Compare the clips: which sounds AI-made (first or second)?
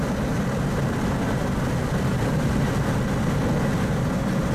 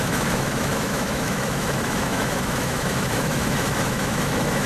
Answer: second